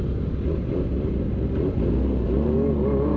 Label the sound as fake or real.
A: real